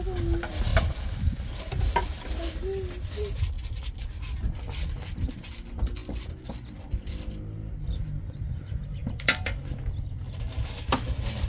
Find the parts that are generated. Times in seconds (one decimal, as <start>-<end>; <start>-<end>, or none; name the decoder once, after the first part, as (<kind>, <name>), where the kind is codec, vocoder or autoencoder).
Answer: none

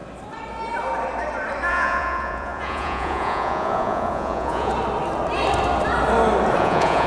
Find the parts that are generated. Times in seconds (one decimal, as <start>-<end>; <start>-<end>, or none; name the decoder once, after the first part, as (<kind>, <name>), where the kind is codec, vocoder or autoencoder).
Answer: 1.7-4.7 (vocoder, Vocos); 6.6-7.1

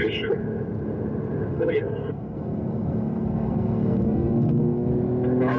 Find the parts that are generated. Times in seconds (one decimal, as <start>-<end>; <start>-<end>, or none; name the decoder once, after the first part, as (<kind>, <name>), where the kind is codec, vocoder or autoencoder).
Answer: 1.5-4.9 (codec, SNAC)

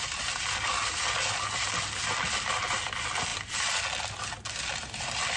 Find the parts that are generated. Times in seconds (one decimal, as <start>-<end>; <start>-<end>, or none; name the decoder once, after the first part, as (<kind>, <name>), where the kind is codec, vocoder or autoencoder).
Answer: none

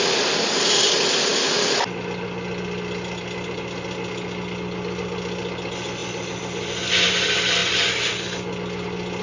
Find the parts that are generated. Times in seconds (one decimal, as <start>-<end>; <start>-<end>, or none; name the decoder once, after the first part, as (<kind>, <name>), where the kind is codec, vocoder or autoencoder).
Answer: none